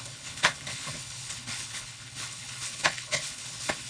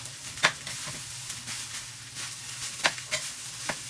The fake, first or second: first